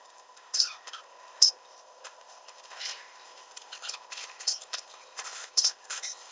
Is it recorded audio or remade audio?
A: remade